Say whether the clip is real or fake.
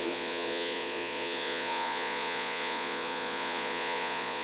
fake